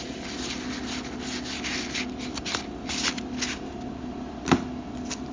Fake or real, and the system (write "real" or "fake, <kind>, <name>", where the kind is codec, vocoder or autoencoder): real